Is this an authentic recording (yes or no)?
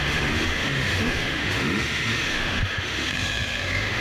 no